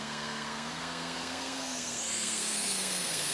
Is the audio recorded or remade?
remade